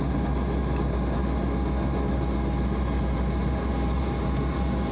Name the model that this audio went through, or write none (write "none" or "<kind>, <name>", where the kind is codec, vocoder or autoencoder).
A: none